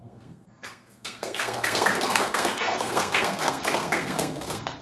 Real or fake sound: fake